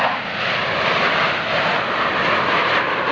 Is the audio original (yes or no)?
yes